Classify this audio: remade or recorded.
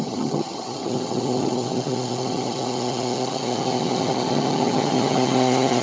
remade